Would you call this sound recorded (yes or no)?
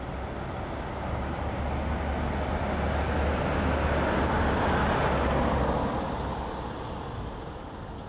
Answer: yes